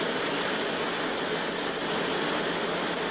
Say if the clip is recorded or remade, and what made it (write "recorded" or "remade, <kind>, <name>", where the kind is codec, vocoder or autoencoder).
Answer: recorded